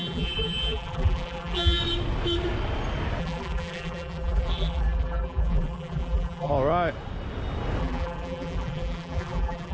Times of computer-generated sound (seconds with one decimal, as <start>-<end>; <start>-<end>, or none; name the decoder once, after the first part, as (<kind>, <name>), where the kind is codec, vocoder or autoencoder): 0.0-1.8 (vocoder, BigVGAN v2); 3.2-6.5; 7.8-9.7